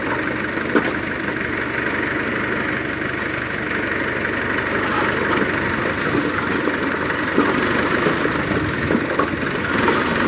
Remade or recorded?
recorded